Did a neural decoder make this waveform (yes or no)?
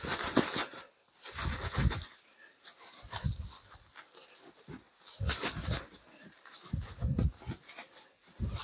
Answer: no